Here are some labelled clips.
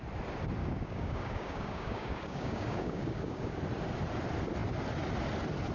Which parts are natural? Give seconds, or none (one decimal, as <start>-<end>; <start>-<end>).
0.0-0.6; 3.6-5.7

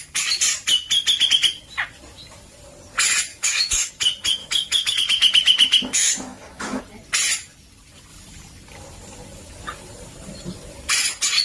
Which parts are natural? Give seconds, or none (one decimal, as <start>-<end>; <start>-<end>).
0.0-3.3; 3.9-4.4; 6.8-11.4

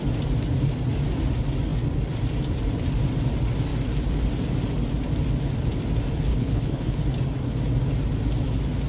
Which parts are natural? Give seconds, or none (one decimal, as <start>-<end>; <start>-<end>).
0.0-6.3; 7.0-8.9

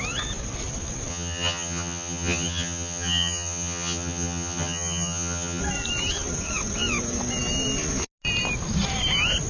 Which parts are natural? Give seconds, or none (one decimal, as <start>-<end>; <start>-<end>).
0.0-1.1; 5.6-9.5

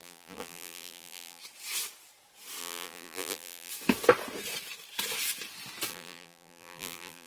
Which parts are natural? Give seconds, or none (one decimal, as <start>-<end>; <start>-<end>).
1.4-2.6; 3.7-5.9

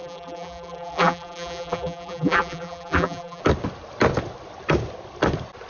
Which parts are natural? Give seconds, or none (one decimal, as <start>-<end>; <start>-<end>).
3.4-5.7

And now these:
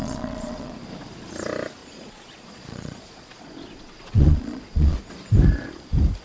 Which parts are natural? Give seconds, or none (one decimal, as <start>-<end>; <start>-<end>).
0.7-1.8; 5.1-6.2